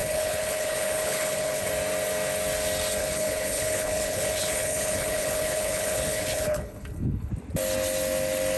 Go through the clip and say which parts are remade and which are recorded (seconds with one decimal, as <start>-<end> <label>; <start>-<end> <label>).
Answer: 0.0-1.7 remade; 1.7-3.0 recorded; 3.0-7.3 remade; 7.3-8.6 recorded